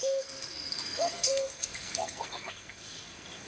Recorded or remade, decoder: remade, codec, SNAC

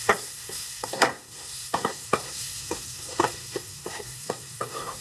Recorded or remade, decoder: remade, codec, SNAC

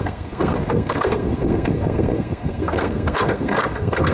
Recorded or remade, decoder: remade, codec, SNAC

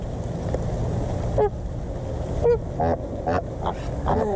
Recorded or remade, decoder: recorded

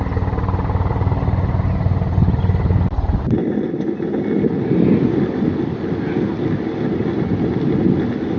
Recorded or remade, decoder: recorded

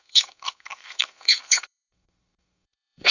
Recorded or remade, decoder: remade, codec, SNAC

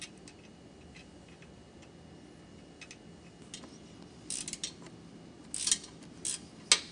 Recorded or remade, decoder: recorded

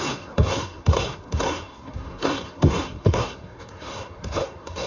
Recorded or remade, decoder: remade, codec, SNAC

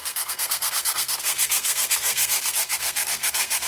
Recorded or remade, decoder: remade, codec, SNAC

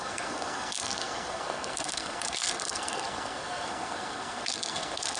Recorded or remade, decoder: remade, codec, SNAC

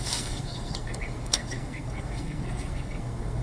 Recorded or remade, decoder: remade, codec, SNAC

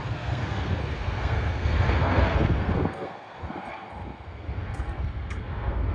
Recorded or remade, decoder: remade, codec, SNAC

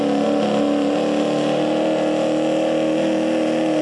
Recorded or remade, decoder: recorded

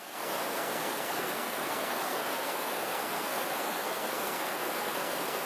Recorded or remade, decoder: remade, codec, SNAC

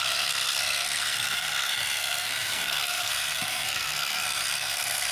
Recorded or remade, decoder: remade, codec, SNAC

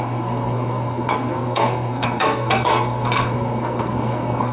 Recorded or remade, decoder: remade, codec, SNAC